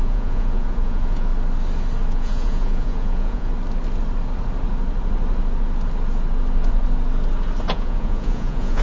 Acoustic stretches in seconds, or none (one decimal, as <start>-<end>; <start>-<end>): 1.3-2.1; 3.5-7.7